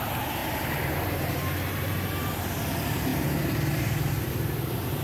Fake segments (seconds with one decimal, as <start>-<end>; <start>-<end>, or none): 0.0-5.0